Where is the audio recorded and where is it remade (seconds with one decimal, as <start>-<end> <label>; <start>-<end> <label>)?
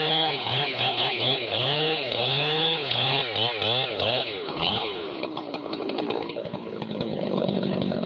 0.0-3.2 remade; 3.2-3.9 recorded; 3.9-8.1 remade